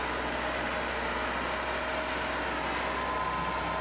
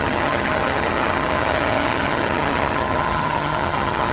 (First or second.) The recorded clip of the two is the first